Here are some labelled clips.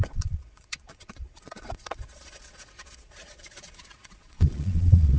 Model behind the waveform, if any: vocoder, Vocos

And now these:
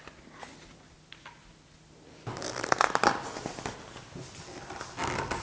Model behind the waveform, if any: none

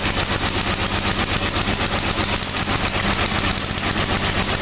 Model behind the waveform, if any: none